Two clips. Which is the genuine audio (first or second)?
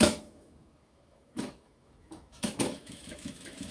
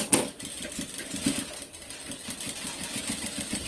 second